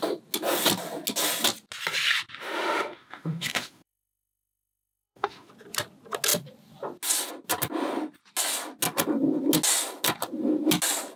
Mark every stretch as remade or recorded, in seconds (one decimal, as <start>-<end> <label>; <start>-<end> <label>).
0.0-2.4 recorded; 2.4-5.5 remade; 5.5-11.2 recorded